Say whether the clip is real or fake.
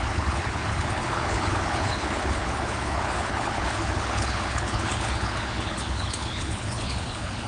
fake